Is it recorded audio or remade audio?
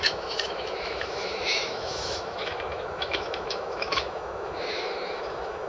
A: remade